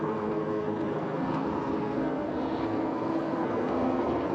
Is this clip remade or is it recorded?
remade